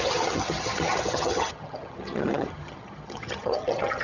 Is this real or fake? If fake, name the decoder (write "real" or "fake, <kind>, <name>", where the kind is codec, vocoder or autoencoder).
fake, vocoder, HiFi-GAN